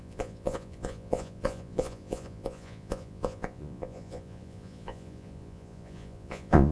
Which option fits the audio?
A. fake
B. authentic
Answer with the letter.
A